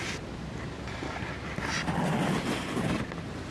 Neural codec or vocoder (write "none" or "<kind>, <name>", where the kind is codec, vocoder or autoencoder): none